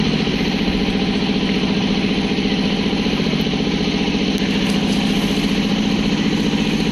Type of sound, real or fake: real